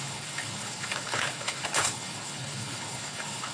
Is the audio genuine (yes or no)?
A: no